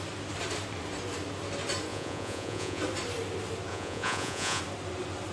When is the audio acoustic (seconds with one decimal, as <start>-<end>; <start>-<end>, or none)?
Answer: 0.0-1.9; 2.8-3.7; 4.6-5.3